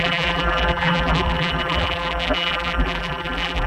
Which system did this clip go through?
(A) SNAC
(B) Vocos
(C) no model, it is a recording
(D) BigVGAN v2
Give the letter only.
D